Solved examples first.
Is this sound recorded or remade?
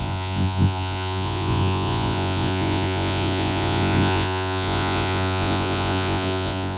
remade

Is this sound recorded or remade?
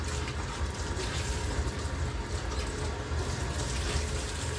recorded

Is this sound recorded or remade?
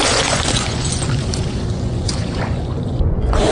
remade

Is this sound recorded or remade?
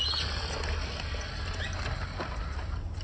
recorded